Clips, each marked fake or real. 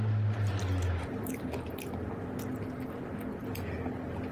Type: real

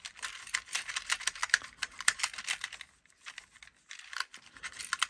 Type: real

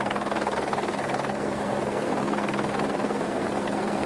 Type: fake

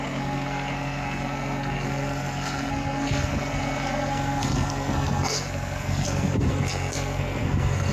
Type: fake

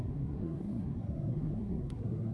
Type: fake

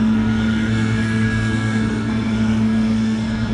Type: fake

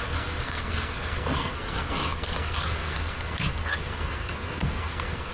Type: fake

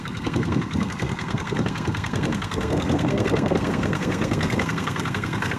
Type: fake